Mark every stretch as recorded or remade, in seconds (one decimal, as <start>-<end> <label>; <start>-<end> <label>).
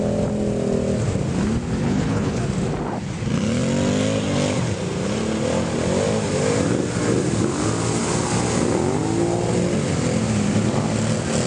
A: 0.0-1.8 recorded; 1.8-2.4 remade; 2.4-11.5 recorded